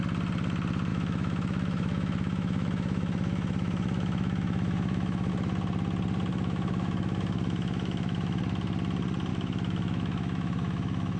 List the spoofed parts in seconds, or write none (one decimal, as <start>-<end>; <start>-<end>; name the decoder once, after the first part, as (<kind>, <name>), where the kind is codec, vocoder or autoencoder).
0.9-5.3 (autoencoder, DAC-VAE); 6.3-8.4; 9.3-11.2